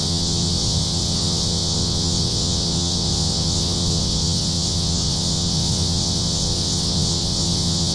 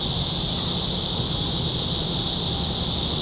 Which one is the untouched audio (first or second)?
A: second